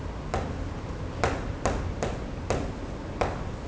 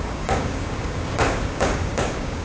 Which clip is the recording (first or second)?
first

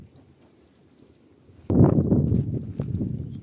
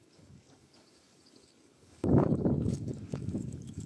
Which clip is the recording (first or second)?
first